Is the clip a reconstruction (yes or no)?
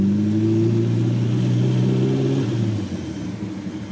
no